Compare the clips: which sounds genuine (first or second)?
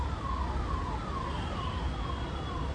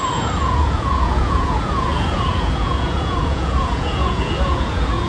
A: first